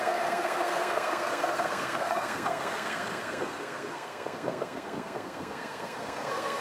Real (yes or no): no